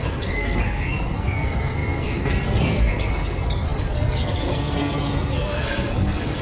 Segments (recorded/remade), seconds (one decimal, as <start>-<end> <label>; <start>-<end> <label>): 0.0-6.4 remade